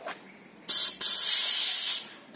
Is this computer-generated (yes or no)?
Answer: no